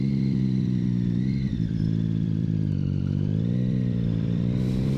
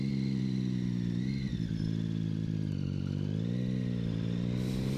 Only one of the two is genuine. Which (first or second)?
second